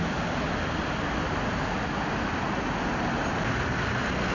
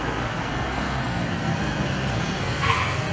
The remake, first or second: second